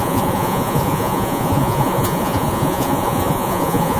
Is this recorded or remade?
remade